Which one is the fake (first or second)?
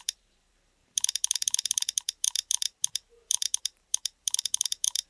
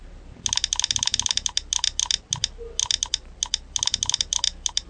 first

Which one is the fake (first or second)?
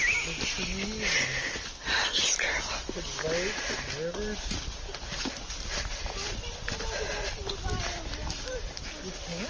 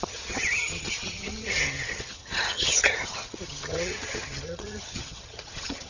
second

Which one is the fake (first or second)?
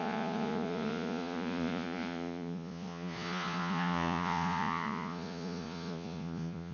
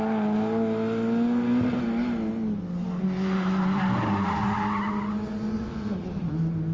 first